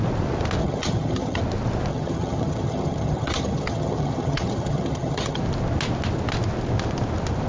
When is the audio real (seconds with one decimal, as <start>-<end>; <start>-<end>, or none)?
0.0-0.6; 1.4-1.9; 5.4-7.5